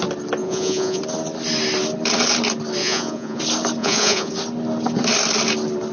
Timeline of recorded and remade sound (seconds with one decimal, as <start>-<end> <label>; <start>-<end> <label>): 0.0-0.4 recorded; 0.4-1.0 remade; 1.0-2.8 recorded; 2.8-3.4 remade; 3.4-3.8 recorded; 3.8-4.3 remade; 4.3-5.9 recorded